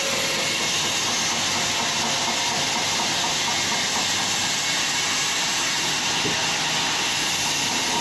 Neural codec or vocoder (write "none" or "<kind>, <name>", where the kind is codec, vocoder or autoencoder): none